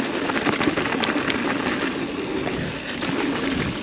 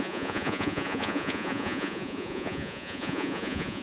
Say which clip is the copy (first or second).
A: second